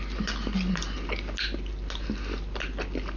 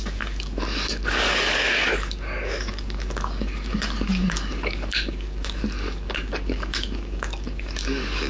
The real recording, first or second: first